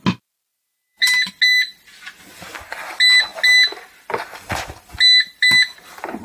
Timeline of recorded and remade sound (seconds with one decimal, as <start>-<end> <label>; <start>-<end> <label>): 0.0-0.5 recorded; 0.5-1.3 remade; 1.3-6.2 recorded